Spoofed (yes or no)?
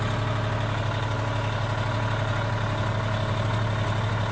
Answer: no